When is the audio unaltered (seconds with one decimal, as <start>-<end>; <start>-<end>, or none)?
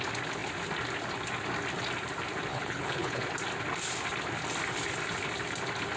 0.0-2.5; 3.2-6.0